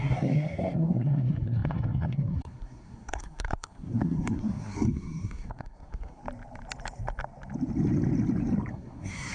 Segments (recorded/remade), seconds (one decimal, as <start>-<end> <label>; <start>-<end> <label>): 0.0-6.2 remade; 6.2-8.7 recorded; 8.7-9.3 remade